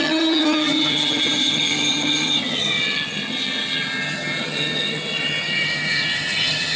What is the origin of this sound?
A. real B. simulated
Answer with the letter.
B